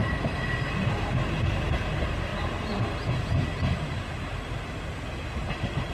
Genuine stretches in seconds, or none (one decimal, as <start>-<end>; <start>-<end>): 0.0-5.9